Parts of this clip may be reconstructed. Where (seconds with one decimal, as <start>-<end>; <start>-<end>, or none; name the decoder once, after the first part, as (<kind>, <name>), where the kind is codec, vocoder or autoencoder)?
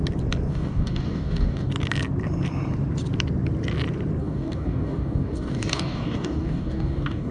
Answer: 0.5-1.7 (codec, DAC); 4.2-7.3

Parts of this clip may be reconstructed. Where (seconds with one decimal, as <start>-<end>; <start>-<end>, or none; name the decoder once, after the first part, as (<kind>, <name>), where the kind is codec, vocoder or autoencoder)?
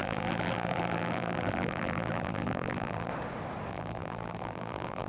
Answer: 0.0-3.1 (vocoder, BigVGAN v2); 3.7-5.1